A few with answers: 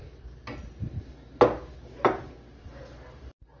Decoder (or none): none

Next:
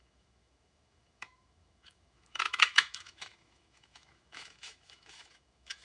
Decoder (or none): autoencoder, DAC-VAE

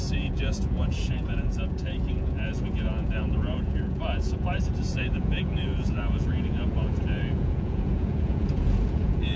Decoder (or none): vocoder, Vocos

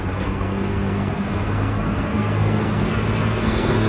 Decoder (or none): codec, SNAC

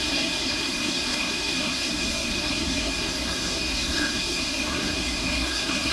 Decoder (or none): codec, SNAC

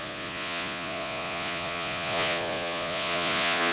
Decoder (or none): vocoder, Vocos